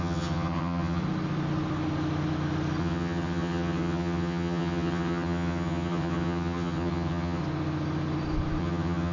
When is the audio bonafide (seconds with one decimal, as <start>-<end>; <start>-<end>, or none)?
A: 1.0-2.8; 7.4-8.6